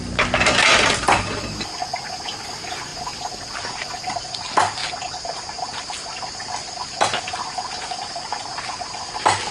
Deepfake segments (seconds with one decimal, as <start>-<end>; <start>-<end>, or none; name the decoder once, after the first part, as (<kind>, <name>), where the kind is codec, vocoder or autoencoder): none